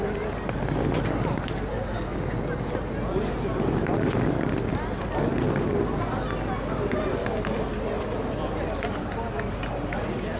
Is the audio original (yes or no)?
yes